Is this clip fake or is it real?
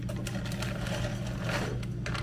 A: real